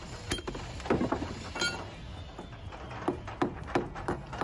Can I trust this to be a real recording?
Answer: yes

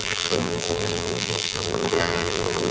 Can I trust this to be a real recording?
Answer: no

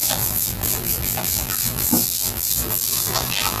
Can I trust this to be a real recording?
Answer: no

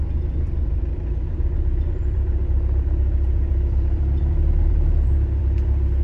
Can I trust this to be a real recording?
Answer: no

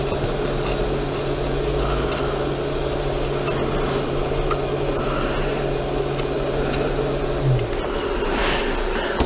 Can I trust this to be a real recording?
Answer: yes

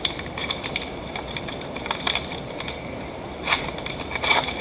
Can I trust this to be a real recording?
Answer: no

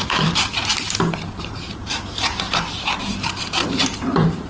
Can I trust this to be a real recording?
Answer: no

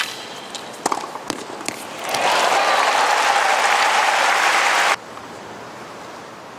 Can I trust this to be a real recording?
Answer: yes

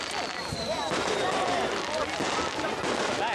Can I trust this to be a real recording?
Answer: yes